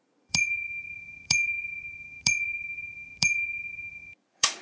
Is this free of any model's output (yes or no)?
no